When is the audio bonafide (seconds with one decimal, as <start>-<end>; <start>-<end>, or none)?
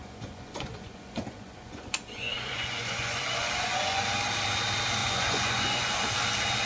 4.0-5.0; 6.0-6.7